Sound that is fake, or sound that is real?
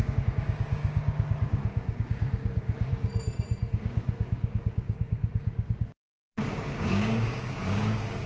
fake